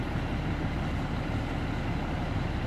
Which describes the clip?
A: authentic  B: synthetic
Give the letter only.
A